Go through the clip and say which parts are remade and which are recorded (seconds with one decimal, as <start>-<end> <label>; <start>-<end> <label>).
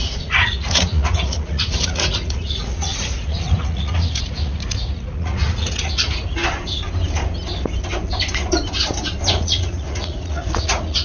0.0-6.4 remade; 6.4-9.3 recorded; 9.3-11.0 remade